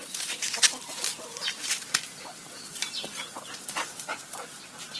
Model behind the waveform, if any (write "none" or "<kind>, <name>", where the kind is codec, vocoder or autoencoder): none